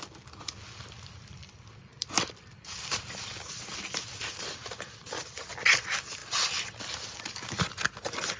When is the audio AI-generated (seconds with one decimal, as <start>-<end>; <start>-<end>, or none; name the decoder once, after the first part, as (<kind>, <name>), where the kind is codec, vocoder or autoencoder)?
1.9-5.5 (vocoder, BigVGAN v2)